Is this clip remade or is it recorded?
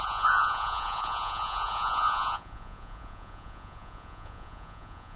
remade